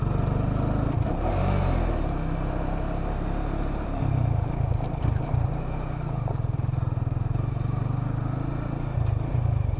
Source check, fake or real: fake